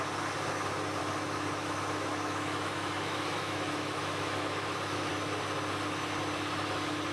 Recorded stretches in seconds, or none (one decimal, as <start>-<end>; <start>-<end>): 0.0-1.0; 5.1-7.1